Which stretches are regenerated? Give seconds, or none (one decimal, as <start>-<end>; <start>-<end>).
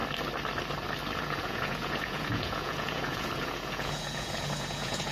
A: 1.2-5.1